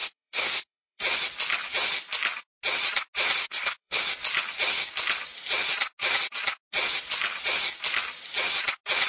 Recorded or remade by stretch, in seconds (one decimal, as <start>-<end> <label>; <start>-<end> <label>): 0.0-1.0 remade; 1.0-3.4 recorded; 3.4-4.0 remade; 4.0-9.1 recorded